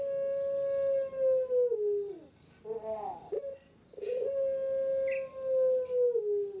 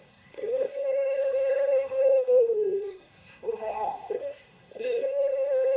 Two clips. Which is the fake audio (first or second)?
second